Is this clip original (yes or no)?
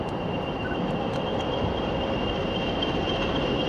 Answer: yes